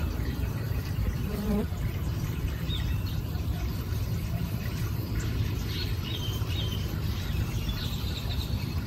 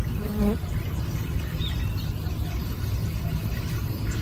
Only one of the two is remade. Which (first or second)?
first